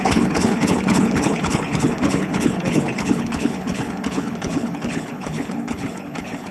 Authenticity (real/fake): fake